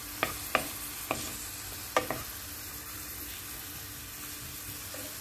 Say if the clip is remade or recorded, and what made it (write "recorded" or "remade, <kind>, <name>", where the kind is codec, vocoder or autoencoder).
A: recorded